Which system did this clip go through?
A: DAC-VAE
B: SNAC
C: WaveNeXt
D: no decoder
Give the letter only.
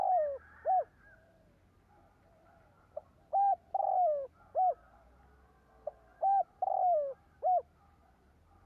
D